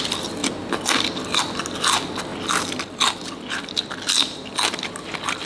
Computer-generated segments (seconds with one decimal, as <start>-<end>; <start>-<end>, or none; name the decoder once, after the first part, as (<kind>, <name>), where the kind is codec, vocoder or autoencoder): none